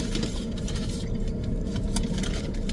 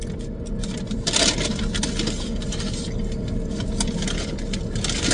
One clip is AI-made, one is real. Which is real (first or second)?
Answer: second